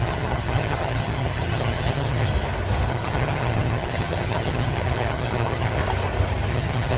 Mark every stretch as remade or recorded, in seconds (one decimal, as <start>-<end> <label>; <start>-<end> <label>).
0.0-2.3 remade; 2.3-2.9 recorded; 2.9-5.8 remade; 5.8-6.5 recorded; 6.5-7.0 remade